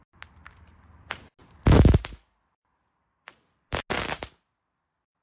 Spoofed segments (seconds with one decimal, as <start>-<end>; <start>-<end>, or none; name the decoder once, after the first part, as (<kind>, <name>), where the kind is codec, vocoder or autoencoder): none